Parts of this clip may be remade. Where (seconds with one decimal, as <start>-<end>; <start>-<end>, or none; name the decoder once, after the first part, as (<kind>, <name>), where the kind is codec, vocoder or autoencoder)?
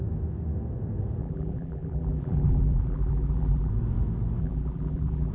1.2-3.7 (vocoder, BigVGAN v2); 4.4-5.3